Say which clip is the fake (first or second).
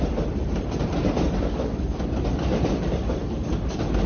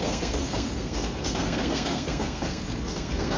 second